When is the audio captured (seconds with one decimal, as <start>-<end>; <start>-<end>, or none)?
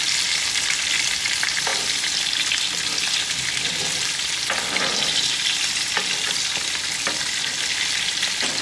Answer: 0.0-8.6